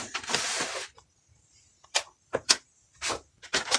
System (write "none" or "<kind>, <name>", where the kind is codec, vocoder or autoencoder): none